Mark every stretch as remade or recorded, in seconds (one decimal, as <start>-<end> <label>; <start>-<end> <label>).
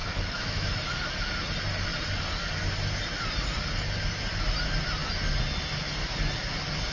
0.0-1.1 remade; 1.1-6.9 recorded